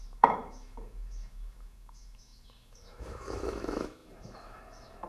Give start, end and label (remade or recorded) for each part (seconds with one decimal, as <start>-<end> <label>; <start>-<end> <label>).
0.0-5.1 remade